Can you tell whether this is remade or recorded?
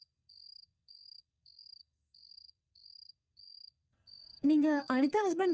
remade